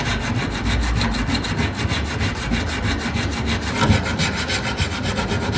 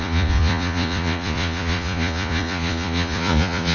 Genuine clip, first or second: first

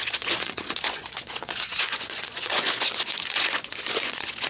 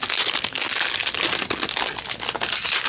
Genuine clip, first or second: second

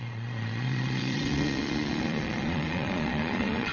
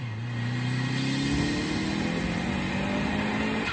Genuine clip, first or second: second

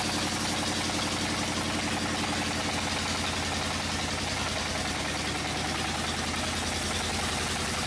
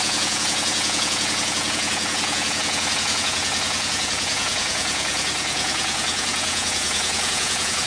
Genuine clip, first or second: first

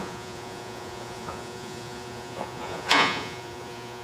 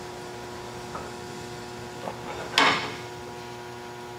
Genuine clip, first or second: second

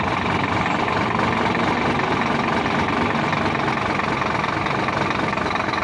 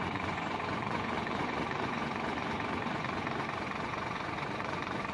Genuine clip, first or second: first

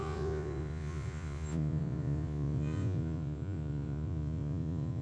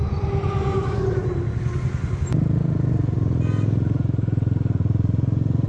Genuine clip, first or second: second